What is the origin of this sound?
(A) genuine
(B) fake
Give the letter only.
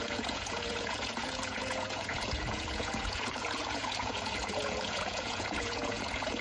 B